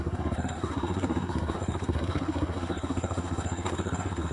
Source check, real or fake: fake